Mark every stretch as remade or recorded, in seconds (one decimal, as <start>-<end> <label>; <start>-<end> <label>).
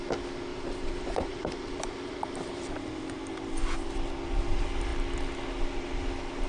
0.0-0.5 recorded; 0.5-2.7 remade; 2.7-6.5 recorded